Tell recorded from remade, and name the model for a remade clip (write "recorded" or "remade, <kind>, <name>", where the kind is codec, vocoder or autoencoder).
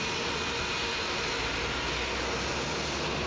recorded